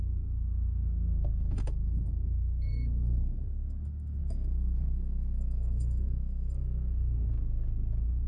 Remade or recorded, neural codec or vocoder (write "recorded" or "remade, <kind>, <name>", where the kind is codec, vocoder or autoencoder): remade, codec, SNAC